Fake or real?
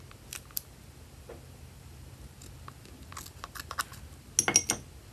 real